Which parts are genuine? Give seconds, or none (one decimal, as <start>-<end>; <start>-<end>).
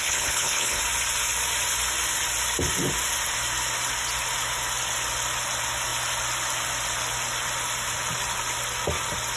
0.8-9.4